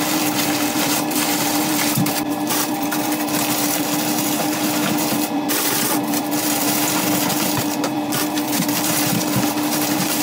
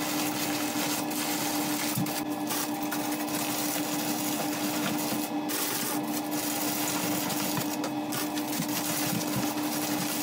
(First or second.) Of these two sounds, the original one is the second